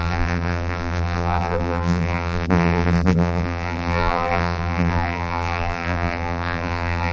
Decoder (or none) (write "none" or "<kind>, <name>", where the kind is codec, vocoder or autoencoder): vocoder, BigVGAN v2